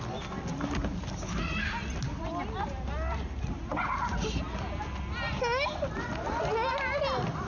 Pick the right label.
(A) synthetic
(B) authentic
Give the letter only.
B